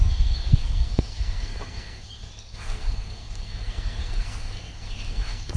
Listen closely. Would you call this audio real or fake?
fake